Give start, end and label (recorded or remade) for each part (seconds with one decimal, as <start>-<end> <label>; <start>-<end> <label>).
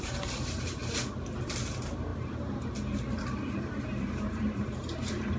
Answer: 0.0-0.8 remade; 0.8-1.4 recorded; 1.4-5.4 remade